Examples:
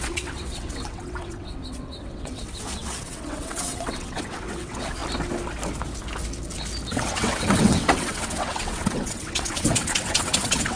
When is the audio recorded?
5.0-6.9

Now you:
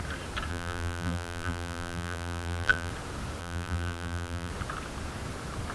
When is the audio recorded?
0.0-0.5; 2.9-3.4; 4.5-5.7

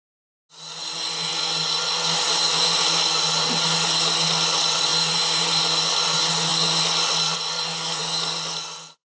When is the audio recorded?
0.0-9.1

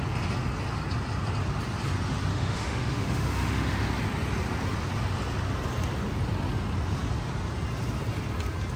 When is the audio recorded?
0.0-2.3; 3.9-8.8

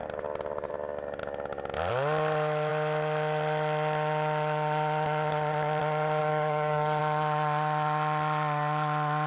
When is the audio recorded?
0.0-6.2; 7.0-9.3

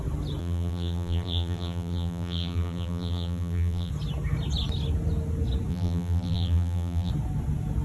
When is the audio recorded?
0.0-0.4; 3.9-5.7; 7.1-7.8

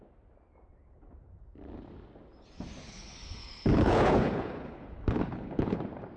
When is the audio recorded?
0.0-2.8; 5.8-6.2